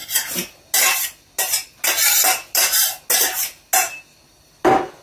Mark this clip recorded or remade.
recorded